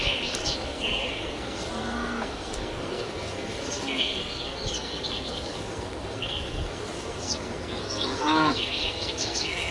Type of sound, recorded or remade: remade